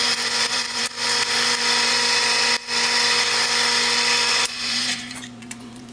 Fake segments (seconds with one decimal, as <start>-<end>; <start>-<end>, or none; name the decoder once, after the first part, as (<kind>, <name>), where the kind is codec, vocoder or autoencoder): 0.0-0.8 (vocoder, Vocos); 4.3-5.9